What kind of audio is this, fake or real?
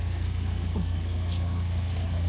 fake